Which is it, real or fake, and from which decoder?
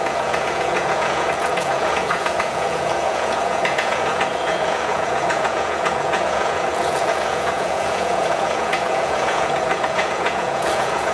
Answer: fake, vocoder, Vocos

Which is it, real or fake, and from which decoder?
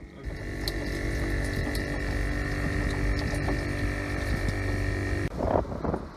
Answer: real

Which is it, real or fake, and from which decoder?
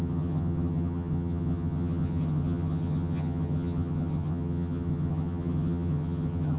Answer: fake, vocoder, HiFi-GAN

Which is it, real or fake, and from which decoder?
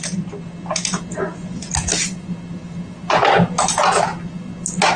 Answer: real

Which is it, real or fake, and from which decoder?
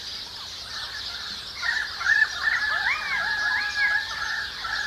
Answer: real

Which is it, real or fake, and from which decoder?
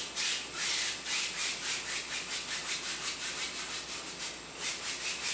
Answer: real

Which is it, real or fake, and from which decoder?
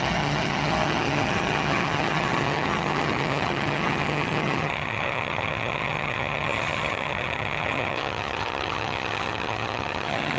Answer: fake, vocoder, HiFi-GAN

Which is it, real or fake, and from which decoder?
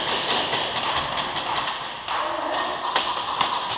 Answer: real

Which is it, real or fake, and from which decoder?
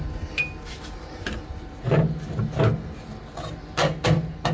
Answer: real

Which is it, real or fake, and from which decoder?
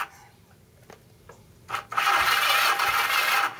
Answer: real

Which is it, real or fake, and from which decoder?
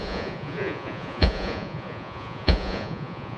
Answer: fake, vocoder, Vocos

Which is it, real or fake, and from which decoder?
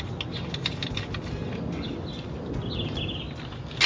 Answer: real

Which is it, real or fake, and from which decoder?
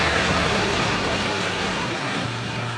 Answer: fake, codec, SNAC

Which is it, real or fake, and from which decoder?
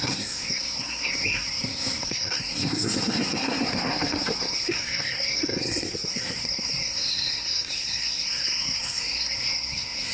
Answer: fake, codec, SNAC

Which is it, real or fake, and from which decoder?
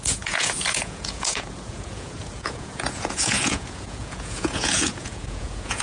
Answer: fake, vocoder, Vocos